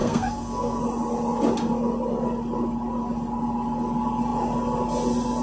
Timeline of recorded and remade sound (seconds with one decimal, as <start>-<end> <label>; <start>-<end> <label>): 0.0-0.8 remade; 0.8-5.4 recorded